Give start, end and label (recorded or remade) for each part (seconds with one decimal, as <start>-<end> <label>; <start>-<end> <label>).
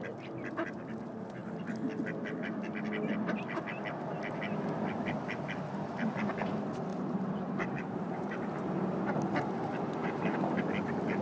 0.0-6.9 recorded; 6.9-8.7 remade; 8.7-11.2 recorded